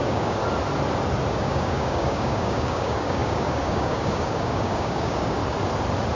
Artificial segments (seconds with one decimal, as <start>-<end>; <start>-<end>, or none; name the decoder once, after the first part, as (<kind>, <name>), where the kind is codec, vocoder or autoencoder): 0.0-0.4 (codec, DAC); 1.3-5.4